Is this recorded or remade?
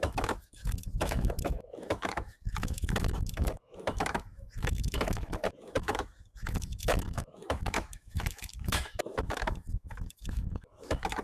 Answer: remade